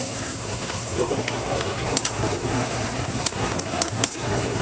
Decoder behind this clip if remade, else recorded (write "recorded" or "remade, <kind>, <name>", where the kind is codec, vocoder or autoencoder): remade, codec, SNAC